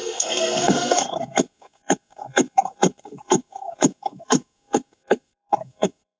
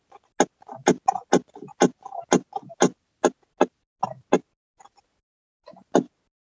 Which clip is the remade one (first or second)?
first